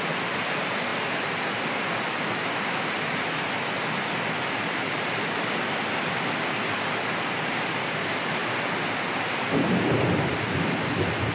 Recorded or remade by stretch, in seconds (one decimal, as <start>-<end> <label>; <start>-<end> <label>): 0.0-11.3 recorded